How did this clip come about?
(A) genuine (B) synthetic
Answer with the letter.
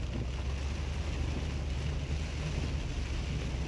A